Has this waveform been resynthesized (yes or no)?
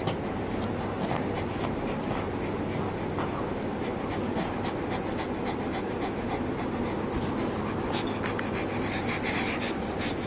no